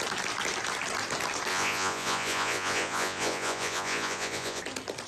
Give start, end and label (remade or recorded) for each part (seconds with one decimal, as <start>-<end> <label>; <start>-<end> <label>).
0.0-1.5 recorded; 1.5-4.6 remade; 4.6-5.1 recorded